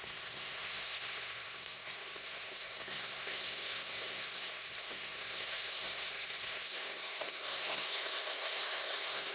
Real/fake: fake